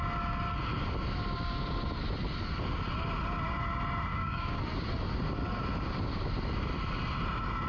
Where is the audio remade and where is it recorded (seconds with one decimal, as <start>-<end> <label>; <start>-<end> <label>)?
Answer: 0.0-4.1 recorded; 4.1-4.6 remade; 4.6-7.7 recorded